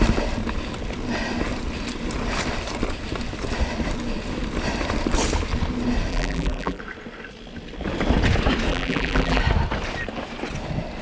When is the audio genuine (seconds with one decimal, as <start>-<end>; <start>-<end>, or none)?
0.0-6.1; 6.8-8.7; 9.4-11.0